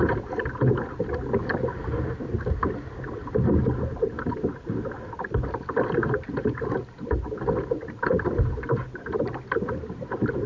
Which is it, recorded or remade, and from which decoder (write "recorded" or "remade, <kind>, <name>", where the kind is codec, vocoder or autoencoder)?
recorded